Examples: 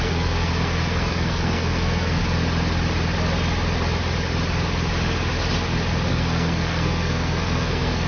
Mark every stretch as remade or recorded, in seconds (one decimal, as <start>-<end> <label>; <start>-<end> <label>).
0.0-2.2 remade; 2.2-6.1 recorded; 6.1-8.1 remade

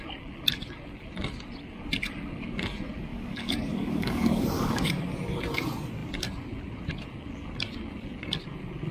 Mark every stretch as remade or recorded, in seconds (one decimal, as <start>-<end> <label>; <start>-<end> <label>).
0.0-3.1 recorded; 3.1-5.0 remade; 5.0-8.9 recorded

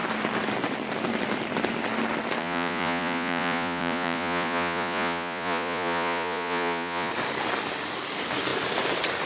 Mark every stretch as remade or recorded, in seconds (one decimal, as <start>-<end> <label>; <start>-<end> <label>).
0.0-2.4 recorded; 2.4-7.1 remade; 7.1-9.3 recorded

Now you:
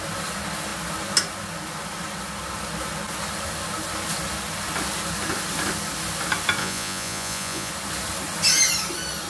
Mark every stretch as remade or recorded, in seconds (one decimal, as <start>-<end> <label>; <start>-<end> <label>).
0.0-6.6 recorded; 6.6-7.7 remade; 7.7-9.3 recorded